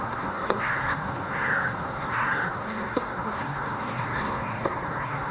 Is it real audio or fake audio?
fake